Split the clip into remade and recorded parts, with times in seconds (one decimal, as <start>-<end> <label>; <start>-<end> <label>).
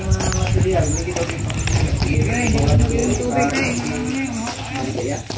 0.0-5.4 recorded